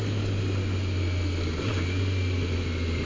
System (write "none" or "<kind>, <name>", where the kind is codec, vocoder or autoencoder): none